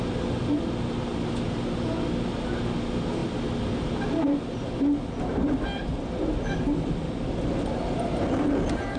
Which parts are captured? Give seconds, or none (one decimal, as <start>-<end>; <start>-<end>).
0.0-9.0